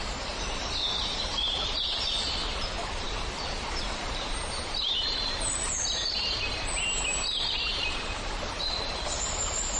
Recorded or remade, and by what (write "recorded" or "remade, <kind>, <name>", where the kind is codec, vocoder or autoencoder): remade, vocoder, BigVGAN v2